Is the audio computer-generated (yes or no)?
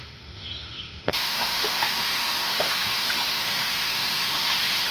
yes